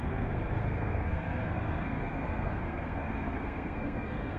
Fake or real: fake